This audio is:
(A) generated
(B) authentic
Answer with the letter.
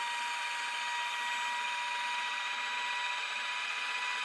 B